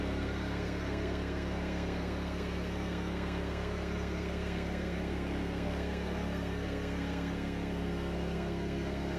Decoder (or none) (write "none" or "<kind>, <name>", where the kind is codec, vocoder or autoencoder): codec, SNAC